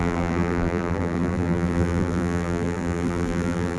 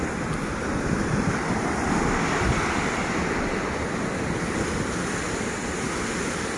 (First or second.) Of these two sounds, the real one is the second